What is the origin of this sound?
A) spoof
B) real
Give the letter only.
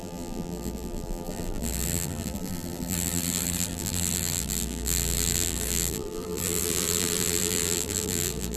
A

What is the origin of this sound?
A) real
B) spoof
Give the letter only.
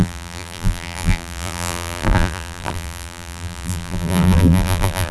B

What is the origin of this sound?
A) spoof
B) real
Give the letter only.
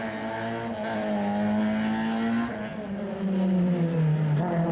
B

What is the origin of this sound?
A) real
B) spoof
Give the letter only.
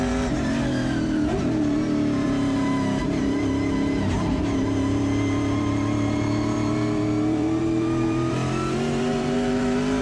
B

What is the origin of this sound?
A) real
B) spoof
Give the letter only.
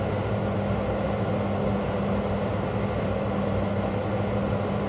A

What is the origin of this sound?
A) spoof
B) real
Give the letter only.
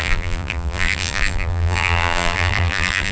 A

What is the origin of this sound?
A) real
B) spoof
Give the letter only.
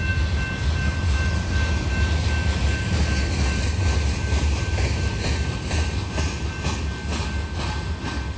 A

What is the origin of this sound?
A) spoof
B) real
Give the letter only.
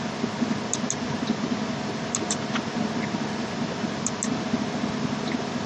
B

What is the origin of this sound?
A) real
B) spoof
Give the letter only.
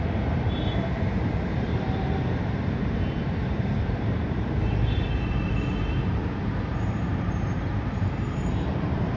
B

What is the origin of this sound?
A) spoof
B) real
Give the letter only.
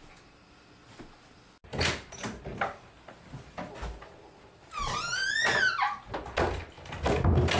B